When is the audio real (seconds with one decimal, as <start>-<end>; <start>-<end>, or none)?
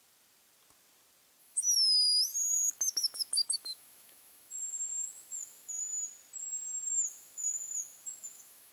0.0-1.4; 5.8-6.9